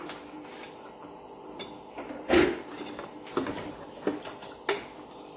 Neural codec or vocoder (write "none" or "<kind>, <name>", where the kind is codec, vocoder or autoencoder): none